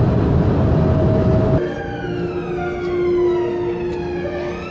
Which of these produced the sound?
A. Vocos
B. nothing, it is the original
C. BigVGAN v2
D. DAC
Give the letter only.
B